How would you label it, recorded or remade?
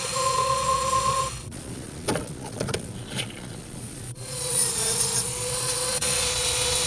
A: remade